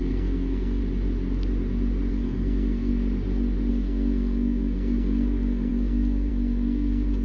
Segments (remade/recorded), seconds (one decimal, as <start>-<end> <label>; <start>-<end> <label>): 0.0-0.8 remade; 0.8-2.1 recorded; 2.1-2.9 remade; 2.9-3.7 recorded; 3.7-7.2 remade